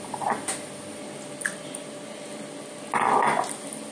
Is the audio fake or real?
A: real